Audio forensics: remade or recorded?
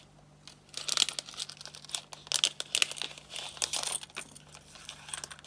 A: recorded